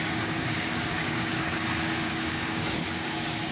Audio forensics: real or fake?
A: fake